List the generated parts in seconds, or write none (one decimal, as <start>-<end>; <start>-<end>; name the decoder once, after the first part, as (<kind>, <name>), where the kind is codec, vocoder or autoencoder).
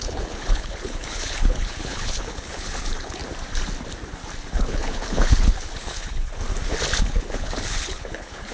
0.0-3.2 (codec, HILCodec); 4.5-6.4; 7.0-8.5